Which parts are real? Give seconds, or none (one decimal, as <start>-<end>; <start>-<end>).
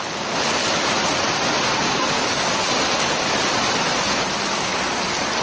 0.0-5.4